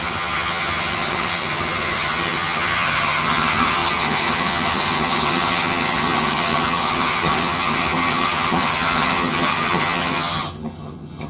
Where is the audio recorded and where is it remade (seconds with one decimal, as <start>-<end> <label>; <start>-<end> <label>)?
0.0-11.3 remade